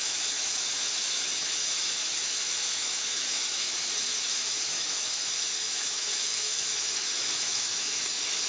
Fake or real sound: fake